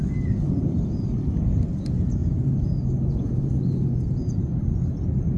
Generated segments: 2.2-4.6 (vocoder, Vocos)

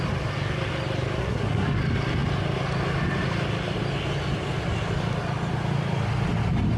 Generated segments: 1.2-1.8 (codec, SNAC)

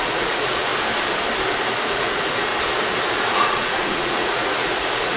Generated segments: 0.0-0.7 (vocoder, Vocos); 1.7-2.5; 3.1-5.2

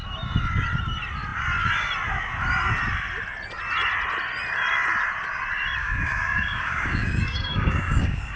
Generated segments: 5.8-8.4 (codec, DAC)

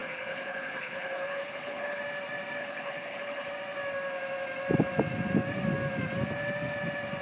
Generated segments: 0.0-2.0 (codec, HILCodec); 2.6-3.5

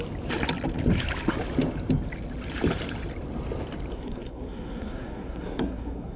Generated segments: 3.9-6.2 (codec, SNAC)

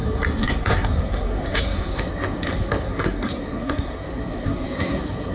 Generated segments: 0.0-5.3 (codec, SNAC)